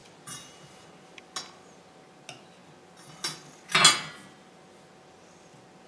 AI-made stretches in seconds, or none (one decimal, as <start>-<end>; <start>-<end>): 0.0-0.9